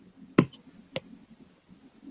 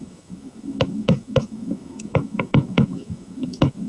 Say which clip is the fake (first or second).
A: second